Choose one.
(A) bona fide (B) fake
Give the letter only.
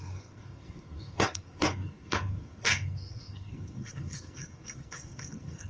B